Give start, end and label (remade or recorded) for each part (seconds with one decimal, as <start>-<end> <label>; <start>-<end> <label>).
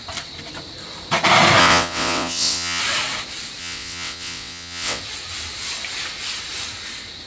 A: 0.0-1.6 recorded; 1.6-2.8 remade; 2.8-3.6 recorded; 3.6-5.0 remade; 5.0-7.3 recorded